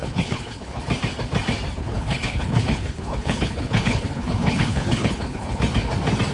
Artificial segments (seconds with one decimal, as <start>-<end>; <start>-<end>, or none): 0.0-0.8; 1.8-5.6